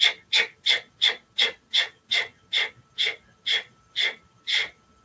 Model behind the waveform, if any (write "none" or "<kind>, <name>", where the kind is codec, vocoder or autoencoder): none